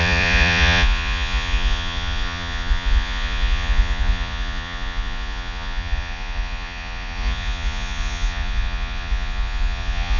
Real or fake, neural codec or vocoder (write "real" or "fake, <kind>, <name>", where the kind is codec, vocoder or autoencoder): fake, vocoder, Vocos